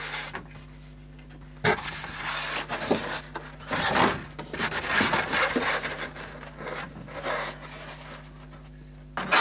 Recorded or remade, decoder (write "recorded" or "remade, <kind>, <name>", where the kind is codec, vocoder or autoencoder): recorded